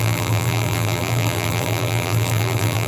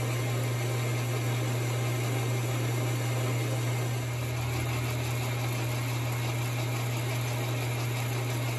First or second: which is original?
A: second